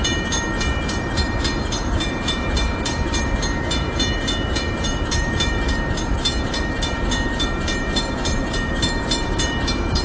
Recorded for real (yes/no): no